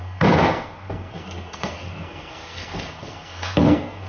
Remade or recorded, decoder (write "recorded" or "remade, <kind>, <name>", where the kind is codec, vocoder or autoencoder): remade, codec, SNAC